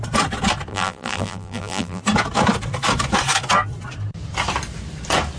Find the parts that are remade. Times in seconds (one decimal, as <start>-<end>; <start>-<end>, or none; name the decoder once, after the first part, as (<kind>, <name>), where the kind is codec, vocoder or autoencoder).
0.7-2.0 (vocoder, BigVGAN v2)